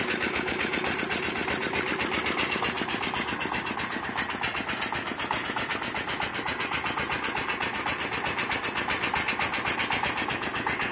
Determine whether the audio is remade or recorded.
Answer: recorded